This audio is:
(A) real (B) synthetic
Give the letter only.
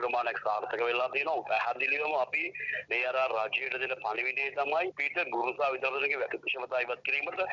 A